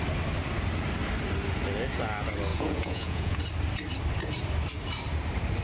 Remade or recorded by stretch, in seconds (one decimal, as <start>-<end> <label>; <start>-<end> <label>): 0.0-2.5 recorded; 2.5-3.4 remade; 3.4-5.6 recorded